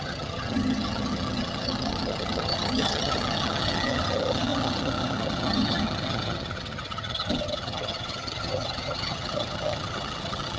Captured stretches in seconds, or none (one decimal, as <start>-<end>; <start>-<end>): none